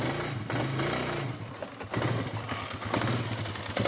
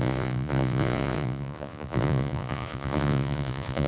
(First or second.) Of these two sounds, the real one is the first